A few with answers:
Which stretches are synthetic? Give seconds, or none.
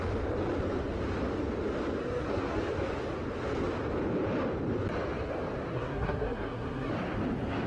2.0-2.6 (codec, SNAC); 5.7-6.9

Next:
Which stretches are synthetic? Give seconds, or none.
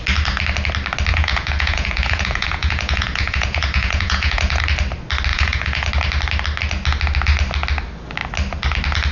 1.1-4.6 (vocoder, Vocos); 5.3-5.9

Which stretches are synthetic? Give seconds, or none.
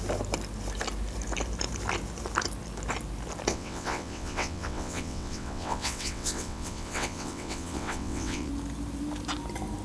3.5-8.5 (vocoder, WaveNeXt)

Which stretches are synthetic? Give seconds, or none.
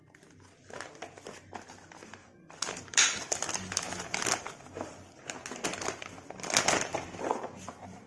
2.9-4.4 (vocoder, BigVGAN v2)